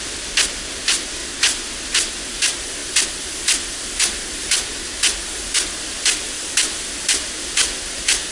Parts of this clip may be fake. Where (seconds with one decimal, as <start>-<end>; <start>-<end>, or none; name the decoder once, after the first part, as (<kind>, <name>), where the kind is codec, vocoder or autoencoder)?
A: none